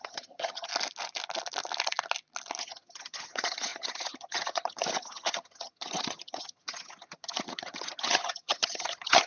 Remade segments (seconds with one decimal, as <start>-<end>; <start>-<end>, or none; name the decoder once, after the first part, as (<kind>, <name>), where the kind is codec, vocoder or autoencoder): 0.0-0.7 (vocoder, HiFi-GAN); 2.6-9.3